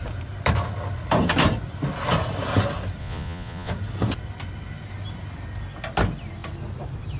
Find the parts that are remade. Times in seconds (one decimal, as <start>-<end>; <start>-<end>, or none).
3.0-3.7